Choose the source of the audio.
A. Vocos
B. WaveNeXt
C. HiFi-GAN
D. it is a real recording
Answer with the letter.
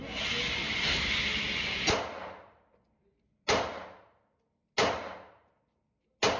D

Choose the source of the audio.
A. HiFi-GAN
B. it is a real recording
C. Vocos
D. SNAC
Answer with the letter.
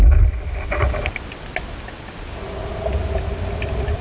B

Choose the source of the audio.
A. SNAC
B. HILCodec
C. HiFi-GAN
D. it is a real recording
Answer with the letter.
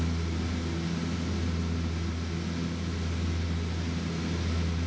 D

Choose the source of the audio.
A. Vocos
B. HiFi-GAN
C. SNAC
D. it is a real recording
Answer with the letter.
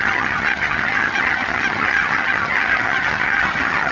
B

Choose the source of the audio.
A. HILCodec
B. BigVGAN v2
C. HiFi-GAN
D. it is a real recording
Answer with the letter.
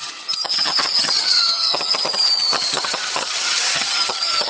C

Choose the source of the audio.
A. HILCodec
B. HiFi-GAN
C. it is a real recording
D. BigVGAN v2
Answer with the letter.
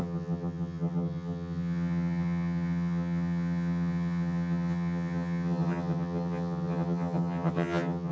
B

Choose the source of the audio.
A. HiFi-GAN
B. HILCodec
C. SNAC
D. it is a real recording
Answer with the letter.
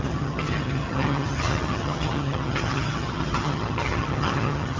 A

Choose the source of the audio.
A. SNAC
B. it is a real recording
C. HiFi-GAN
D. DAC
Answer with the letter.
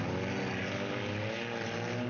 B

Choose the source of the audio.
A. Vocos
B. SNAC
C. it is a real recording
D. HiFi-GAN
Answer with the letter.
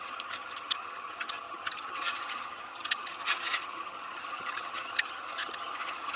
D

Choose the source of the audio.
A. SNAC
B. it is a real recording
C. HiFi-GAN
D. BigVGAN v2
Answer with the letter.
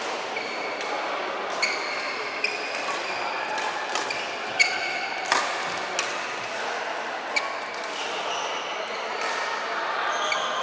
B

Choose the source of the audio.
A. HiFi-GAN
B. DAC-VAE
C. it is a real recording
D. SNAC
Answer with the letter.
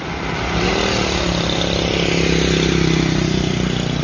C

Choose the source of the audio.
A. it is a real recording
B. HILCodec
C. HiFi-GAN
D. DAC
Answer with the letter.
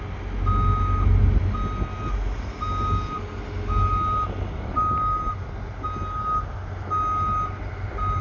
A